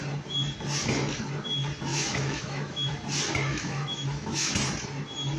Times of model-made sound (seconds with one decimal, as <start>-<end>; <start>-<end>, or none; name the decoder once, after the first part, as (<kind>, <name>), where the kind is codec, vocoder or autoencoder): 1.9-2.9 (autoencoder, DAC-VAE); 3.5-4.5